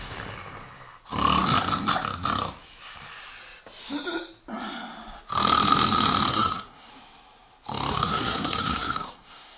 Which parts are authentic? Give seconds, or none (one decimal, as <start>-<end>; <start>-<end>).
0.0-6.3; 6.9-7.9